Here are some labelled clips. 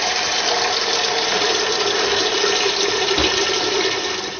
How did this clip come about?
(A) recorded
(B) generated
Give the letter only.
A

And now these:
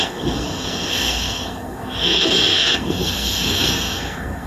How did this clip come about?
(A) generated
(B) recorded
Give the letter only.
A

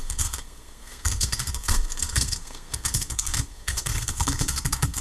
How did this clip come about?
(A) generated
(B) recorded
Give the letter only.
A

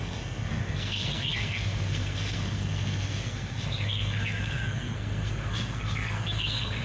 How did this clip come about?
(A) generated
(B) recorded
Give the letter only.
A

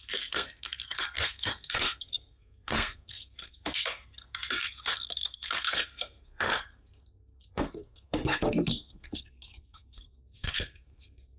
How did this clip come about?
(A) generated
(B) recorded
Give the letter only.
A